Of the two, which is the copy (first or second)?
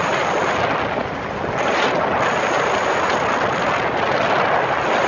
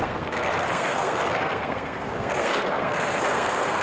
second